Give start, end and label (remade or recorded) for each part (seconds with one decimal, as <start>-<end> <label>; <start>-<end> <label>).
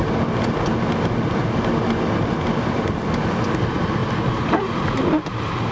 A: 0.0-5.7 recorded